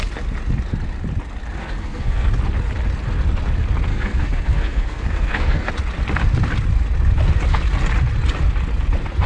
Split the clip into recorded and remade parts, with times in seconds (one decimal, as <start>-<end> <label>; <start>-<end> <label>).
0.0-1.6 recorded; 1.6-2.3 remade; 2.3-3.9 recorded; 3.9-5.7 remade; 5.7-9.3 recorded